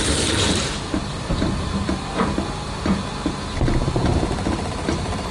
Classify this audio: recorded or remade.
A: remade